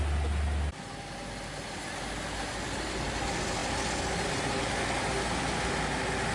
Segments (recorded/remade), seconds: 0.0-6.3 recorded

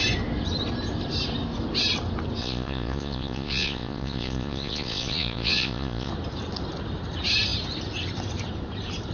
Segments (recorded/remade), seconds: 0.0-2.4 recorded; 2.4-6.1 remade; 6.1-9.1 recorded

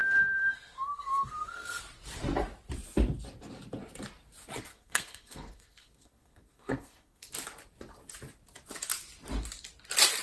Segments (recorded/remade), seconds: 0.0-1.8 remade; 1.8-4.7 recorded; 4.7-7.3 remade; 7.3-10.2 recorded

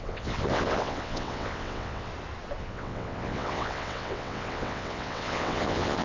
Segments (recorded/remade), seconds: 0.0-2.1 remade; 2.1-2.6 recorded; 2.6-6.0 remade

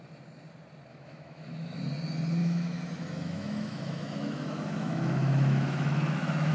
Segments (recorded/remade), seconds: 0.0-0.9 recorded; 0.9-1.8 remade; 1.8-2.4 recorded; 2.4-6.5 remade

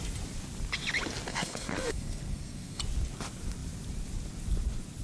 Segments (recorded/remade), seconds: 0.0-1.3 recorded; 1.3-2.8 remade; 2.8-5.0 recorded

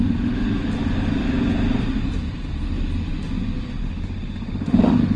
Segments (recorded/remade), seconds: 0.0-3.8 recorded; 3.8-5.2 remade